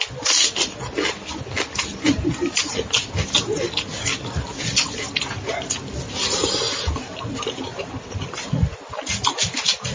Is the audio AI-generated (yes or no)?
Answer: no